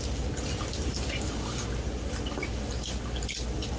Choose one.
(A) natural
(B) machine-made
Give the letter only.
A